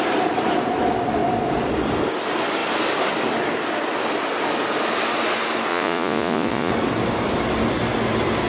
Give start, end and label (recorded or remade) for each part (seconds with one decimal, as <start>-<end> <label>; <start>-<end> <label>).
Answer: 0.0-5.7 recorded; 5.7-6.7 remade; 6.7-8.5 recorded